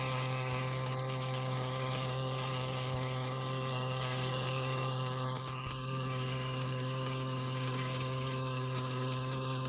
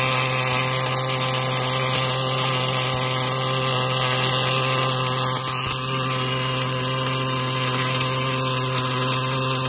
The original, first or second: second